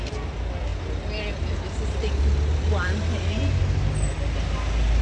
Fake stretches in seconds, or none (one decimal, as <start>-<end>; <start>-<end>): none